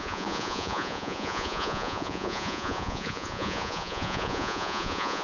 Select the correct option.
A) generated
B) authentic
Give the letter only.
A